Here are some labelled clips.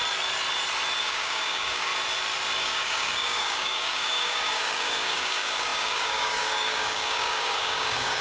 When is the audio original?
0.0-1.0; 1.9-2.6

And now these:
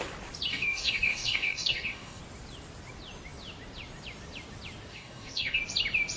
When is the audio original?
0.0-0.5; 2.2-4.9; 5.6-6.2

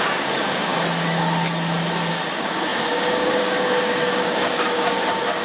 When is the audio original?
0.7-2.1